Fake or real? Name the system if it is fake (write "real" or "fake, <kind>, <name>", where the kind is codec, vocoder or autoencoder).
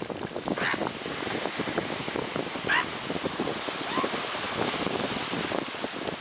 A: real